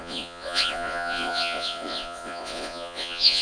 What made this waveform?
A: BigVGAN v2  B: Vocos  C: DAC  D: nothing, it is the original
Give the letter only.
B